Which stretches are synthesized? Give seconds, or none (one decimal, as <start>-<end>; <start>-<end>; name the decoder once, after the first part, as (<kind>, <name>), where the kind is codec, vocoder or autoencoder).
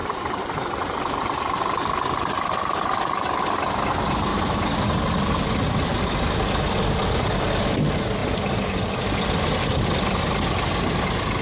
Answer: 0.0-3.4 (vocoder, BigVGAN v2); 4.3-5.3